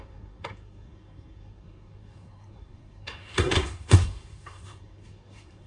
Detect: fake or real fake